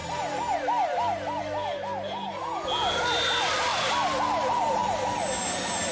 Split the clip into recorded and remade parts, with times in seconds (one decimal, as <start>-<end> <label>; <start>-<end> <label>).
0.0-5.9 recorded